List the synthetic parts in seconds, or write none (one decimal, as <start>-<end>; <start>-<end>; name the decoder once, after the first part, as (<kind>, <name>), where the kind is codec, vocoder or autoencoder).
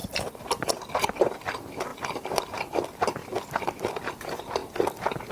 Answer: 0.0-0.7 (vocoder, BigVGAN v2); 1.9-2.8